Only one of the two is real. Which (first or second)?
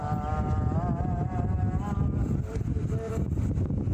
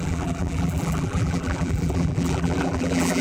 first